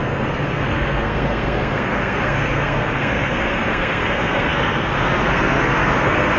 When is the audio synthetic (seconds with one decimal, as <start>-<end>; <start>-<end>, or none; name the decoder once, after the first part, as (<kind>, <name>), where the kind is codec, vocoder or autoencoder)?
0.0-6.4 (codec, SNAC)

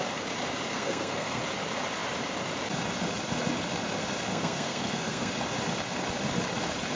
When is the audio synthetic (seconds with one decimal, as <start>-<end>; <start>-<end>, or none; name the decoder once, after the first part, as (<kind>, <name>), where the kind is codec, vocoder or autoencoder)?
0.7-1.4 (codec, SNAC); 4.3-5.3

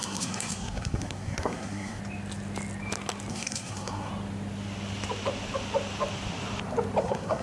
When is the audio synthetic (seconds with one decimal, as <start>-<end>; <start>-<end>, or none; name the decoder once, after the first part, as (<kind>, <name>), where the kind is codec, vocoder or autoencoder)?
0.0-2.0 (codec, SNAC); 3.3-4.1; 7.0-7.4

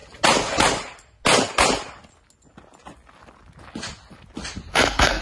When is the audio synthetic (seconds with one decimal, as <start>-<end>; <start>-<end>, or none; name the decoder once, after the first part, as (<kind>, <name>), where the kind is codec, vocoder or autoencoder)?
4.7-5.2 (codec, SNAC)